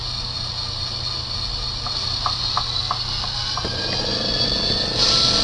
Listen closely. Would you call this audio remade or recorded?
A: recorded